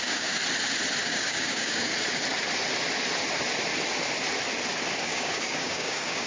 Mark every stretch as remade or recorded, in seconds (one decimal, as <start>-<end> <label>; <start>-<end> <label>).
0.0-0.4 remade; 0.4-1.0 recorded; 1.0-1.9 remade; 1.9-5.0 recorded; 5.0-6.3 remade